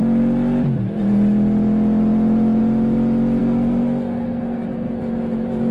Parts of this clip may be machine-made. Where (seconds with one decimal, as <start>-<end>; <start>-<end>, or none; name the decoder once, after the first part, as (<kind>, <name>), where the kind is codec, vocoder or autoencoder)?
3.4-5.0 (codec, SNAC)